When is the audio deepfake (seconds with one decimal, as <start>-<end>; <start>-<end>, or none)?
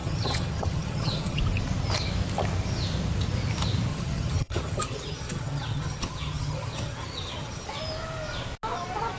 0.0-1.4; 3.9-7.7